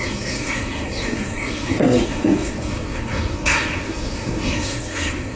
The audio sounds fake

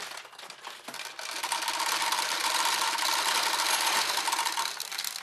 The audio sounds real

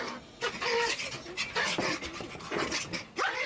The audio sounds real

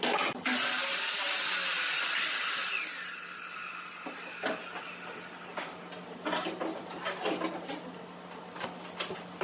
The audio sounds real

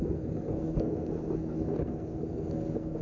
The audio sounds fake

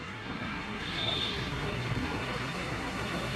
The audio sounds fake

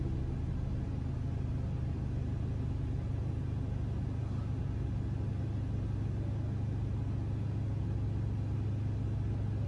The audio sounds real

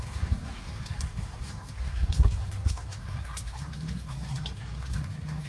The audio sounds fake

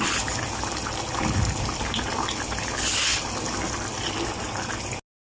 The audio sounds real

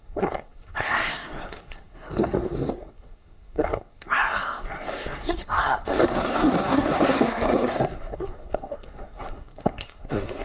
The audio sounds fake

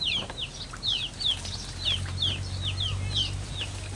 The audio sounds real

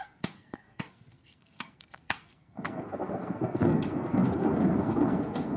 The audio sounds fake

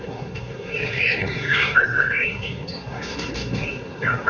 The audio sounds fake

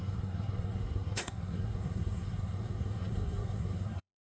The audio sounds fake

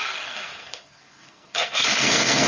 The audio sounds fake